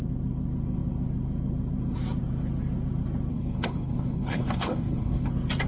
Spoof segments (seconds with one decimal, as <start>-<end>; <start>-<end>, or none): 3.3-5.3